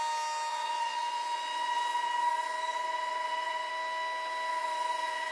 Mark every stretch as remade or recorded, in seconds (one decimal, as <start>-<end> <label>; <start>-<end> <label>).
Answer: 0.0-0.5 recorded; 0.5-3.7 remade; 3.7-4.5 recorded; 4.5-5.3 remade